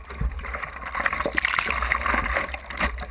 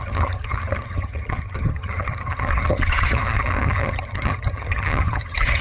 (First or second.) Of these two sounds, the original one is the first